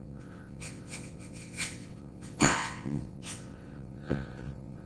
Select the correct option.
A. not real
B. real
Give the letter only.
A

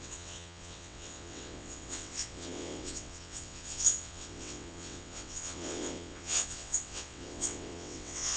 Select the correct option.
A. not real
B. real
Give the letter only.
A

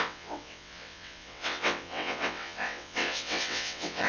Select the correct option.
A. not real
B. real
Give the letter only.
A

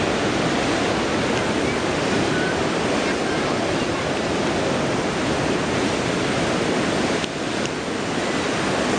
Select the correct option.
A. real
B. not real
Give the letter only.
A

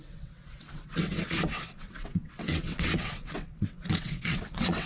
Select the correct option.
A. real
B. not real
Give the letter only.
B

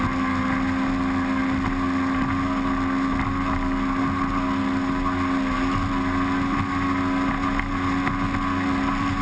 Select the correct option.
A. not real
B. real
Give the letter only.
B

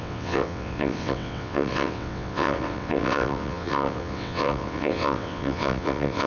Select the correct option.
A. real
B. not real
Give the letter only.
B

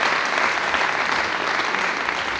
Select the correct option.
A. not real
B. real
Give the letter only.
B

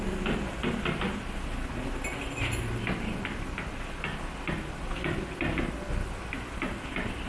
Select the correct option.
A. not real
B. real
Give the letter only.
B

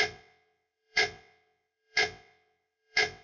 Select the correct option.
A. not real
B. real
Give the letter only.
A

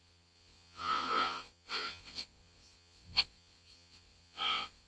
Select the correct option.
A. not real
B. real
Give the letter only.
A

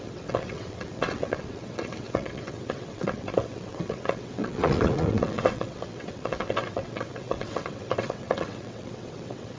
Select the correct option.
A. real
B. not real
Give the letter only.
B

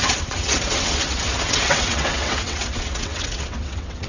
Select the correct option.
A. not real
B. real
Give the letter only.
A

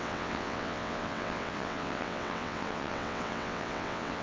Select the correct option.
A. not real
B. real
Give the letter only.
A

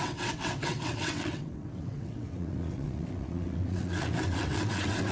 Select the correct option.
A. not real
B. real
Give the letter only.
A